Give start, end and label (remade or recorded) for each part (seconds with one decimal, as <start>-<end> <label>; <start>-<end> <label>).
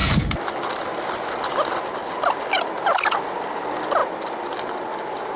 0.0-4.0 recorded; 4.0-5.4 remade